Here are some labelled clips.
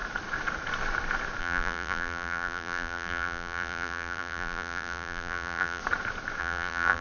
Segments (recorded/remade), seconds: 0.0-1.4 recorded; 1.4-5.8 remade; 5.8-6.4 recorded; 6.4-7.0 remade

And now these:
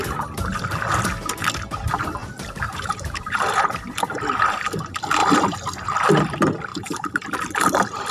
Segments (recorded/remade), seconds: 0.0-2.2 recorded; 2.2-4.0 remade; 4.0-6.7 recorded; 6.7-7.3 remade; 7.3-8.1 recorded

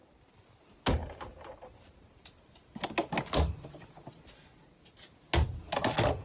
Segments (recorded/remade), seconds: 0.0-1.0 remade; 1.0-6.2 recorded